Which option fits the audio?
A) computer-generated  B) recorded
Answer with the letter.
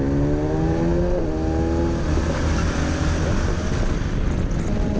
B